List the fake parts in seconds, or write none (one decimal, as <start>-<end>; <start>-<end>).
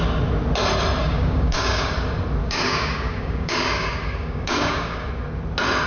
1.0-1.9; 2.4-5.1